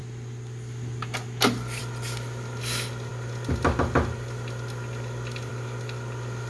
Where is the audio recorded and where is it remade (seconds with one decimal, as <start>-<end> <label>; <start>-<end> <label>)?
0.0-6.5 recorded